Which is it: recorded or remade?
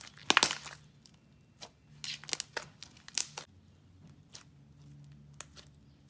recorded